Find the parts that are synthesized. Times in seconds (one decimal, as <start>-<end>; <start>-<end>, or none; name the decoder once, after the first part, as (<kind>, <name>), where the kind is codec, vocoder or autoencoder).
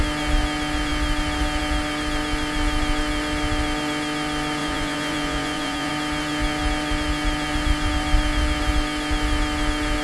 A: 4.6-5.9 (vocoder, Vocos)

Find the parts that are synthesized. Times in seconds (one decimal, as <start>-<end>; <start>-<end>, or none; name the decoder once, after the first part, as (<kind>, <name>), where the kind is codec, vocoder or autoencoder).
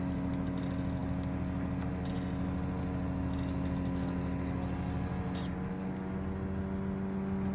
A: none